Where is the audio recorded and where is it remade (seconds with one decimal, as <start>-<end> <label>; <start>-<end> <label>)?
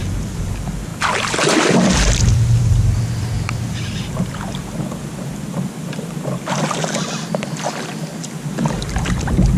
0.0-9.6 recorded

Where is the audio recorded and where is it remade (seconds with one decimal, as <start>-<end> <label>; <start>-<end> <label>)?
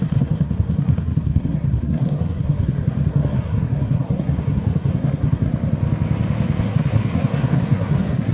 0.0-5.5 remade; 5.5-6.6 recorded; 6.6-8.3 remade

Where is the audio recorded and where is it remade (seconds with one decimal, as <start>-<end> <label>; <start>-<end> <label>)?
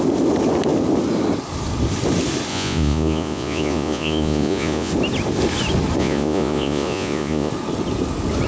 0.0-2.5 recorded; 2.5-4.9 remade; 4.9-6.0 recorded; 6.0-7.5 remade; 7.5-8.5 recorded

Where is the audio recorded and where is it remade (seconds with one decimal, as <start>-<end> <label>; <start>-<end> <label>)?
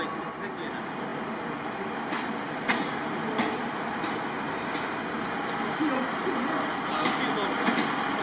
0.0-8.2 recorded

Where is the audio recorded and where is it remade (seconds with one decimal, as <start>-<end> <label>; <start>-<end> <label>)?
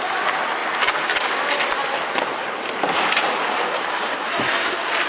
0.0-5.1 recorded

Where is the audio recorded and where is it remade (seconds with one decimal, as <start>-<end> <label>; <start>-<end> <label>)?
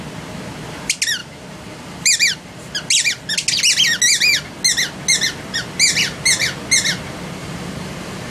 0.0-1.2 recorded; 1.2-2.7 remade; 2.7-7.4 recorded; 7.4-8.3 remade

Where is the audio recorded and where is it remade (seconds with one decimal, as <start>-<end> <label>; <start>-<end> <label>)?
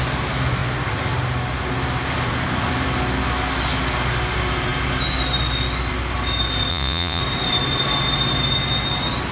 0.0-6.7 recorded; 6.7-7.2 remade; 7.2-9.3 recorded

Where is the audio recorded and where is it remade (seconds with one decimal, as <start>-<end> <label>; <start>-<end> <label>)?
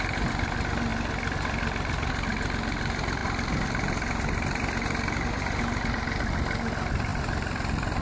0.0-3.2 recorded; 3.2-5.6 remade; 5.6-7.1 recorded; 7.1-8.0 remade